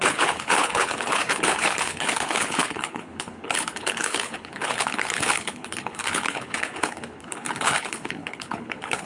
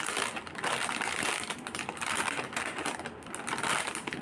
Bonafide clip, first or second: second